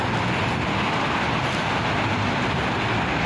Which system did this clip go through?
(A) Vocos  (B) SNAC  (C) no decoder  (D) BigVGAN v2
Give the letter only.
C